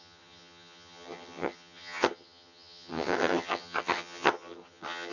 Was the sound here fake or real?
fake